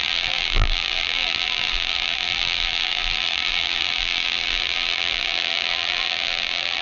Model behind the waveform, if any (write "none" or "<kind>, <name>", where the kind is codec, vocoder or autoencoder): vocoder, BigVGAN v2